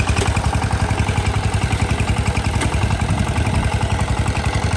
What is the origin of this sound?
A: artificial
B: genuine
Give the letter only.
B